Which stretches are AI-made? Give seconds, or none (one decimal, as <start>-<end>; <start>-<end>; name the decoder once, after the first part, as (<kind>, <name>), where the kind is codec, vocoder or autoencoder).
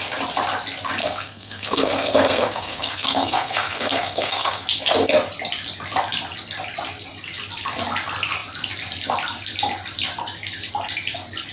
1.0-4.6 (codec, SNAC)